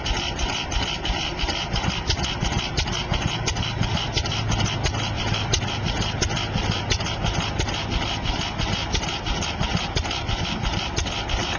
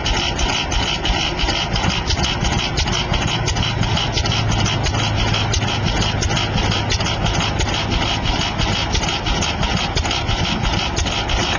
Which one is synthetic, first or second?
first